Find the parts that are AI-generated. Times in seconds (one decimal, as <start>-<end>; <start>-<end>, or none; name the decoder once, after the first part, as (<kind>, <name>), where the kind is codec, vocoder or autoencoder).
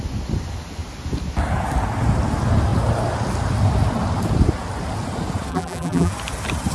5.5-6.1 (vocoder, BigVGAN v2)